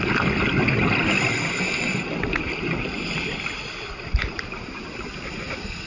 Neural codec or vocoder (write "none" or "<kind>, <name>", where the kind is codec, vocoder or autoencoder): none